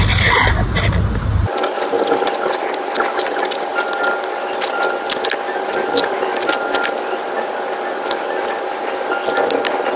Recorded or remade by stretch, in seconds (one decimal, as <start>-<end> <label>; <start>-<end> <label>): 0.0-10.0 recorded